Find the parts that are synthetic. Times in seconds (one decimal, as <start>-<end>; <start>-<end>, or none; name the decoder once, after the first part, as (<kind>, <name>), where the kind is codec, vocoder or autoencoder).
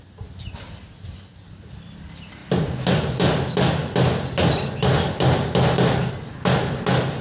none